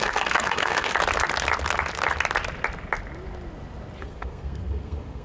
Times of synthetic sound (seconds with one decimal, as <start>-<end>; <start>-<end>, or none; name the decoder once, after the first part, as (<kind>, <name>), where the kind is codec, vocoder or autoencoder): 0.0-0.9 (codec, SNAC); 4.0-5.2